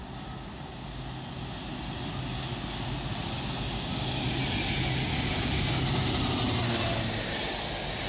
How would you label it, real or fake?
real